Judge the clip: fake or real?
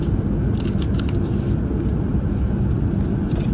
real